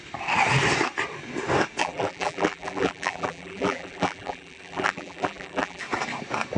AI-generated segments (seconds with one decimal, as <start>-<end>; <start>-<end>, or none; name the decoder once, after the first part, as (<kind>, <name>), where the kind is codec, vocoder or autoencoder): 1.8-5.8 (vocoder, BigVGAN v2)